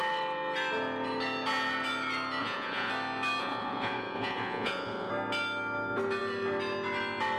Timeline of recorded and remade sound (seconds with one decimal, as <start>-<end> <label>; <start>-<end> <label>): 0.0-2.4 recorded; 2.4-2.9 remade; 2.9-3.4 recorded; 3.4-5.1 remade; 5.1-7.4 recorded